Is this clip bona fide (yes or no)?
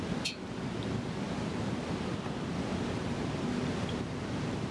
yes